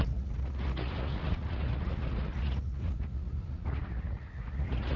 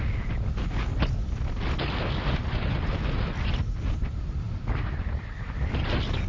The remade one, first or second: first